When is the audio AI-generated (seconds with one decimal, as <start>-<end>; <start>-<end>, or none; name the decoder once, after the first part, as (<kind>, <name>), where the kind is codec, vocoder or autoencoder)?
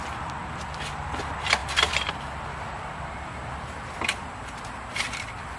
1.6-2.1 (vocoder, BigVGAN v2); 3.4-5.6